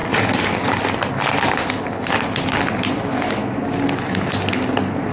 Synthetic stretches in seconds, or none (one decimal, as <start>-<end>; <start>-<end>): 3.1-3.6